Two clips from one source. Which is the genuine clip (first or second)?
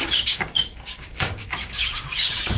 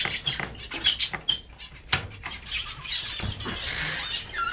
second